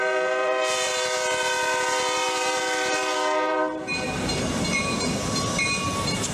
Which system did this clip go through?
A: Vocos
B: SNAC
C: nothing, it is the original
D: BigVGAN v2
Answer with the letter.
D